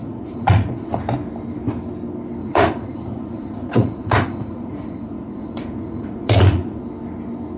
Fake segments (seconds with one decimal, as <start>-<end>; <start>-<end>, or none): 0.0-1.0; 2.4-6.8